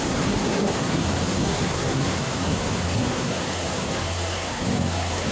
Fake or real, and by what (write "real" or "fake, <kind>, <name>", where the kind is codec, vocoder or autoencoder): fake, codec, SNAC